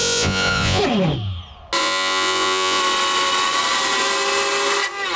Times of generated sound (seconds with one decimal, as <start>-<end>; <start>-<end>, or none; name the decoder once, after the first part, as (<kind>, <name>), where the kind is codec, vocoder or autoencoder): 0.0-0.8 (vocoder, Vocos); 1.8-2.8